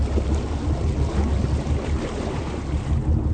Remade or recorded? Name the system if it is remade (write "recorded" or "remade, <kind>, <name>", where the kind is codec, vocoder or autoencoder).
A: recorded